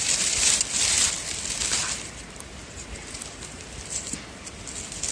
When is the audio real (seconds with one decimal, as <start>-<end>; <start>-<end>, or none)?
0.0-5.1